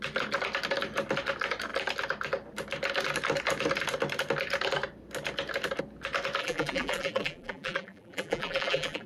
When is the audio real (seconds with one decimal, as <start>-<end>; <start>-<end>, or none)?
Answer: 0.0-6.4